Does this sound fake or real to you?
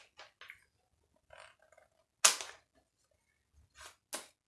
real